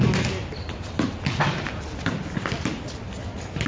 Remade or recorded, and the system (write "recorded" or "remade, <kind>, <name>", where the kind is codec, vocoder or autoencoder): recorded